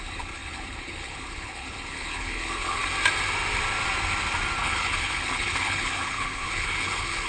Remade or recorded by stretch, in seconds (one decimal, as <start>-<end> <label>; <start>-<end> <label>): 0.0-2.8 remade; 2.8-4.6 recorded; 4.6-7.3 remade